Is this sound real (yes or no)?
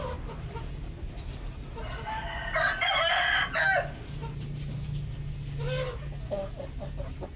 yes